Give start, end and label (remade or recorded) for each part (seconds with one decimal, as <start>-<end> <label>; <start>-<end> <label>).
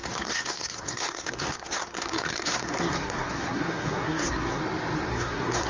0.0-4.6 remade; 4.6-5.1 recorded; 5.1-5.7 remade